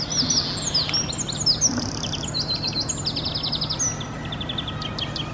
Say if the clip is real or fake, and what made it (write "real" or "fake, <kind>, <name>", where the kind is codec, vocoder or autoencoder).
real